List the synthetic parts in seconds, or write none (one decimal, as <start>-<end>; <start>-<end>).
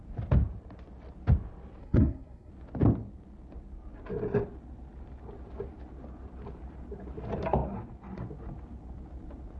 1.8-2.5